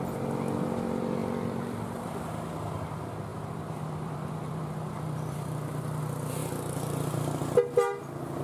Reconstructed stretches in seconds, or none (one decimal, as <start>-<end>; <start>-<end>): 1.2-2.3; 3.3-6.0